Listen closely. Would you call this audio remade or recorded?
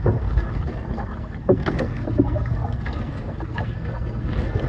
remade